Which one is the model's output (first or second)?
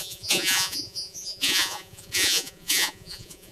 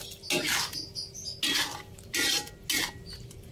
first